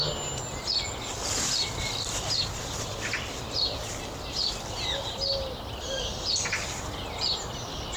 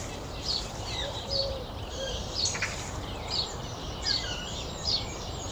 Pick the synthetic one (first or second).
second